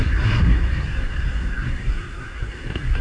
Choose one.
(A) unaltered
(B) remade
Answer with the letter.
B